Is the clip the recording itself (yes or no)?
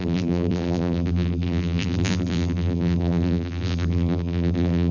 no